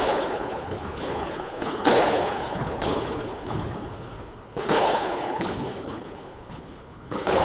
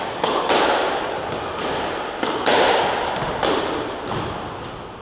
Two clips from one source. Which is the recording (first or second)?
second